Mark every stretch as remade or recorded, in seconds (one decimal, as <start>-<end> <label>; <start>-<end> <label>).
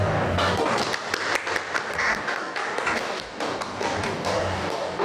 0.0-0.8 remade; 0.8-1.9 recorded; 1.9-5.0 remade